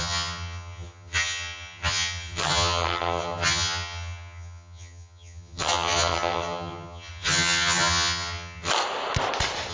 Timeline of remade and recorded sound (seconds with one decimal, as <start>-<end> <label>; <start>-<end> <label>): 0.0-8.7 remade; 8.7-9.7 recorded